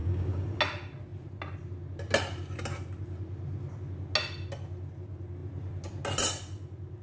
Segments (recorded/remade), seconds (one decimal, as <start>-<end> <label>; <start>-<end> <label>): 0.0-0.6 remade; 0.6-7.0 recorded